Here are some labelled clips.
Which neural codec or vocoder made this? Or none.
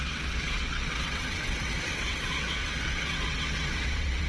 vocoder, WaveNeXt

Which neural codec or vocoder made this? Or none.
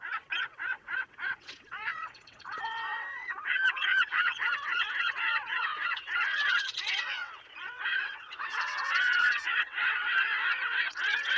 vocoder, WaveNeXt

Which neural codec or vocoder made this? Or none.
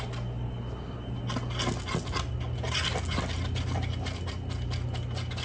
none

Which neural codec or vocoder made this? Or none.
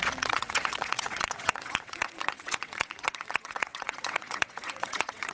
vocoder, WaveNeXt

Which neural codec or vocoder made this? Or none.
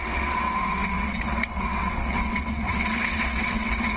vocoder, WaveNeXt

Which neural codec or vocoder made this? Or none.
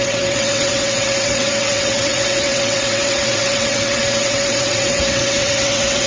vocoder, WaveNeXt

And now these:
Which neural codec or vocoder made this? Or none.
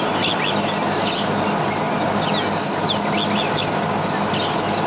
none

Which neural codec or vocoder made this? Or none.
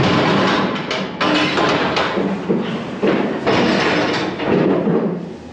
none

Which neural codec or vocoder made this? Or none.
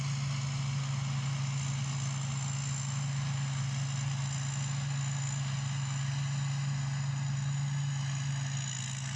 none